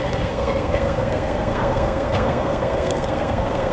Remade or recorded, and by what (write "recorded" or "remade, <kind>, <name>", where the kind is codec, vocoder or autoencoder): remade, codec, SNAC